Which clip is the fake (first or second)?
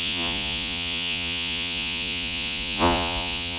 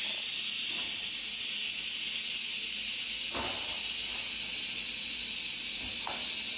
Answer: first